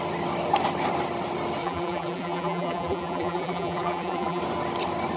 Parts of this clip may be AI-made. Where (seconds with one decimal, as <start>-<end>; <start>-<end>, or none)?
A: 1.6-4.4